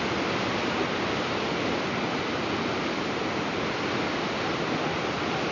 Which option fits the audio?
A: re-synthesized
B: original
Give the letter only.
B